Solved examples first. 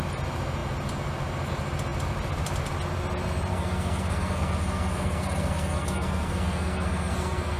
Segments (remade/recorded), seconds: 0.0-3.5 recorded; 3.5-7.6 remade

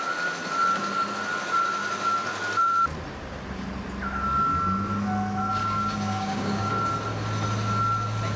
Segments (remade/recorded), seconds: 0.0-5.6 recorded; 5.6-6.7 remade; 6.7-8.4 recorded

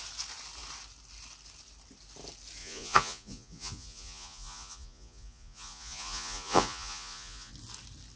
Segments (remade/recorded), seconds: 0.0-2.6 recorded; 2.6-7.5 remade; 7.5-8.2 recorded

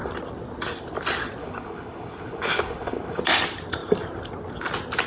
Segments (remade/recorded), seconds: 0.0-1.4 recorded; 1.4-3.2 remade; 3.2-5.1 recorded

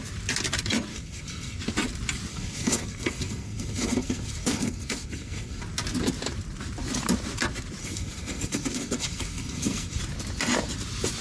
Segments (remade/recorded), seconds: 0.0-0.9 recorded; 0.9-1.6 remade; 1.6-2.3 recorded; 2.3-5.6 remade; 5.6-7.8 recorded; 7.8-10.0 remade; 10.0-11.2 recorded

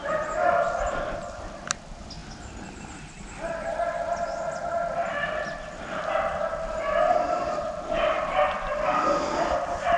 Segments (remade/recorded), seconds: 0.0-10.0 recorded